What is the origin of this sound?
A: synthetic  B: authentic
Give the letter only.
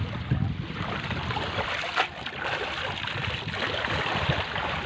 B